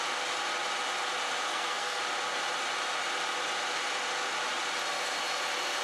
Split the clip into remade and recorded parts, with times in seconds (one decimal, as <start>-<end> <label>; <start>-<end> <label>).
0.0-1.5 recorded; 1.5-2.0 remade; 2.0-5.8 recorded